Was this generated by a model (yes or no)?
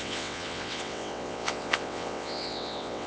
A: yes